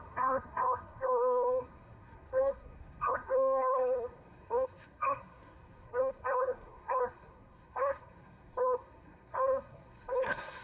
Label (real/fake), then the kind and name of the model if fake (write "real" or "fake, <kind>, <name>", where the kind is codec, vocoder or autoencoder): fake, codec, SNAC